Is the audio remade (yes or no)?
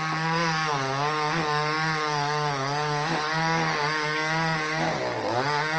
yes